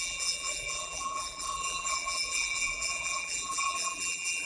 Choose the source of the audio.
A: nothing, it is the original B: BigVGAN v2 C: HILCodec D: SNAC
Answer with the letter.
B